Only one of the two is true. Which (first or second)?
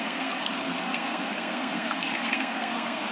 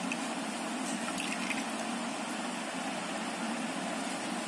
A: second